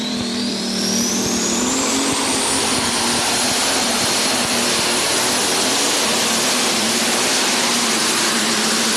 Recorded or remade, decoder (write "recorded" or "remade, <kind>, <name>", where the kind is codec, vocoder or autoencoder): remade, vocoder, BigVGAN v2